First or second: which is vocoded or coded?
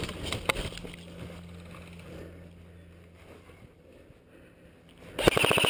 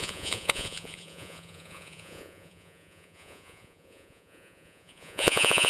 second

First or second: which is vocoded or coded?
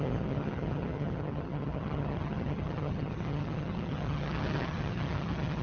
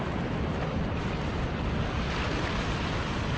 first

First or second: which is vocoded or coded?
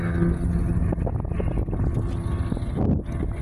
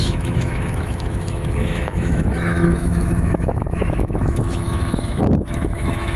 second